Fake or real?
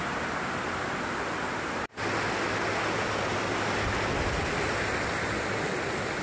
real